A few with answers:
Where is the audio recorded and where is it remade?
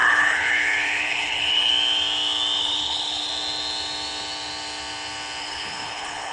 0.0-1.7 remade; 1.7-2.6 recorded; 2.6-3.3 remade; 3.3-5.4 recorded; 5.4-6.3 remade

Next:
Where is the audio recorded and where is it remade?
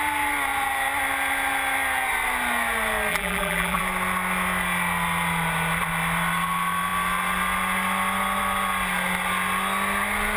0.0-3.1 recorded; 3.1-3.8 remade; 3.8-10.4 recorded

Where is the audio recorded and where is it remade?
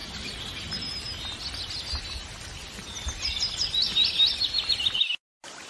0.0-5.7 recorded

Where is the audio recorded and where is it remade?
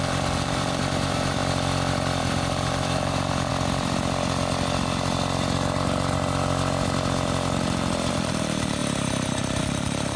0.0-1.4 remade; 1.4-2.2 recorded; 2.2-3.5 remade; 3.5-8.1 recorded; 8.1-8.8 remade; 8.8-9.6 recorded; 9.6-10.2 remade